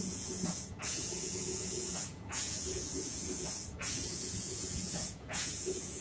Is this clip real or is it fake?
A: fake